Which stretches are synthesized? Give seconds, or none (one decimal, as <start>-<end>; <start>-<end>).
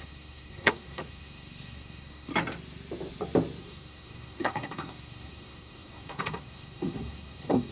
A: 0.0-2.3; 3.6-7.7